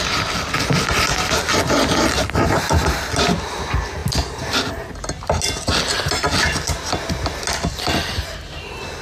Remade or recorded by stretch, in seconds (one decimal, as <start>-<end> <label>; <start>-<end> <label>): 0.0-9.0 recorded